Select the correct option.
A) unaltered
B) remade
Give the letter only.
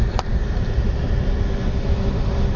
A